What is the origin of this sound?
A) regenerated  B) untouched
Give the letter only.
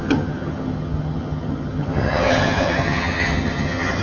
A